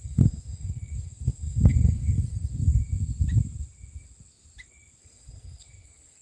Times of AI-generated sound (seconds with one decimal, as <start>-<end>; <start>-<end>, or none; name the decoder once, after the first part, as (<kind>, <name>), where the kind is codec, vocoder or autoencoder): 0.0-2.8 (codec, SNAC); 5.0-6.2

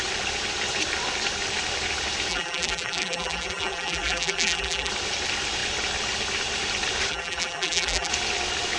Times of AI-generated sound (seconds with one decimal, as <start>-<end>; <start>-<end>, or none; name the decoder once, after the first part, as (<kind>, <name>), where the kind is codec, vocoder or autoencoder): 2.3-4.9 (vocoder, BigVGAN v2); 7.1-8.1

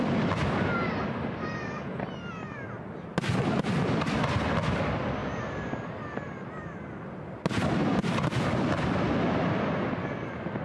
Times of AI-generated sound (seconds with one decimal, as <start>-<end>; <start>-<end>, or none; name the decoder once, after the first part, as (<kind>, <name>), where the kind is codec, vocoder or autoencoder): none

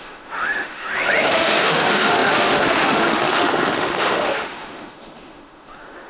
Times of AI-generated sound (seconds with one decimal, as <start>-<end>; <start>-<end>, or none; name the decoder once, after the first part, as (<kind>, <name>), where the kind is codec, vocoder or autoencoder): 0.0-6.1 (autoencoder, DAC-VAE)